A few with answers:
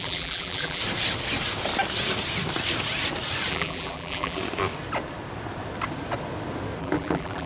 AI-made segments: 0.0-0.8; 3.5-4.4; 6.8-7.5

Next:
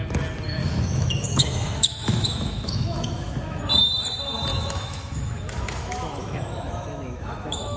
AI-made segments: 0.6-3.6; 4.5-7.8